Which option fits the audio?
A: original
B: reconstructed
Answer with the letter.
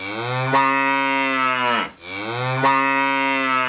A